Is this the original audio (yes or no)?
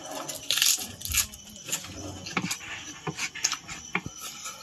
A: yes